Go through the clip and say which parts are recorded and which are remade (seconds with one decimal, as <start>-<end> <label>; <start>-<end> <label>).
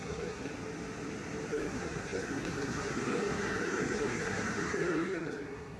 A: 0.0-0.5 remade; 0.5-1.5 recorded; 1.5-5.8 remade